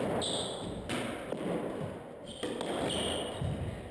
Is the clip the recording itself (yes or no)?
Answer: yes